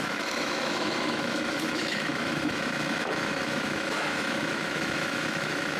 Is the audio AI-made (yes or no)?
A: yes